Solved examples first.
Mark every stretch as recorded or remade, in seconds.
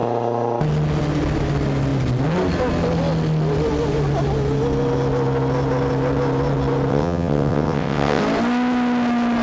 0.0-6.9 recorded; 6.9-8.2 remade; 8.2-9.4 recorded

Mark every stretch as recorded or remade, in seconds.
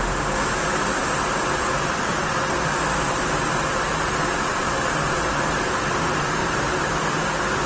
0.0-4.5 recorded; 4.5-6.0 remade; 6.0-6.4 recorded; 6.4-7.0 remade; 7.0-7.7 recorded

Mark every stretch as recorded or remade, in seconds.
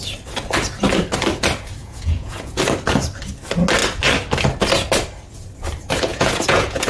0.0-1.8 recorded; 1.8-2.6 remade; 2.6-6.1 recorded; 6.1-6.9 remade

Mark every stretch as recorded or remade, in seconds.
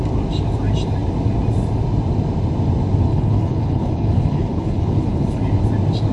0.0-3.1 recorded; 3.1-5.4 remade; 5.4-6.1 recorded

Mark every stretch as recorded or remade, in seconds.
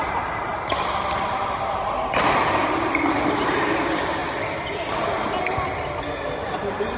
0.0-0.5 remade; 0.5-2.6 recorded; 2.6-4.2 remade; 4.2-6.5 recorded; 6.5-7.0 remade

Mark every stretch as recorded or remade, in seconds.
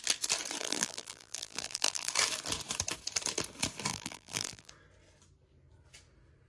0.0-0.6 recorded; 0.6-2.1 remade; 2.1-3.9 recorded; 3.9-4.7 remade; 4.7-6.5 recorded